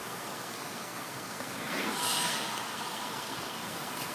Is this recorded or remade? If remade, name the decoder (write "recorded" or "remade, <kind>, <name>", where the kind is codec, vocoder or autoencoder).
remade, codec, SNAC